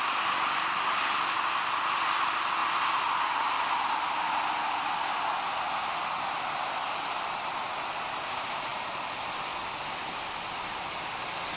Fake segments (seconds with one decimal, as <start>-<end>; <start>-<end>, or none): none